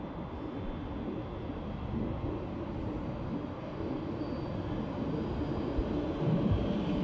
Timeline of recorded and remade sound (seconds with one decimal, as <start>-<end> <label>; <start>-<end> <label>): 0.0-3.5 recorded; 3.5-4.2 remade; 4.2-7.0 recorded